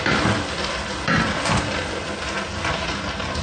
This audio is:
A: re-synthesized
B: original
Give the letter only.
B